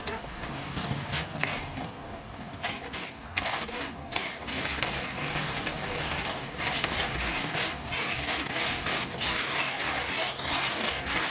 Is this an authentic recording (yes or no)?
no